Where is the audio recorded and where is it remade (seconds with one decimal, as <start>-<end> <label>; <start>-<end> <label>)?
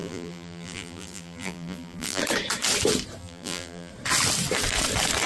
0.0-2.2 remade; 2.2-3.2 recorded; 3.2-3.9 remade; 3.9-5.3 recorded